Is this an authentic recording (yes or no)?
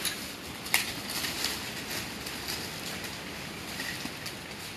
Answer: yes